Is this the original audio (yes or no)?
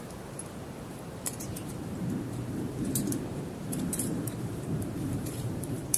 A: no